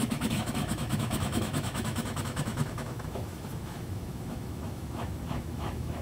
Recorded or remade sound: remade